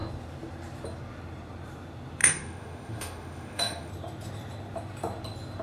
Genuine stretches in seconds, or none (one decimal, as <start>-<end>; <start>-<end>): 0.0-2.2; 3.9-5.6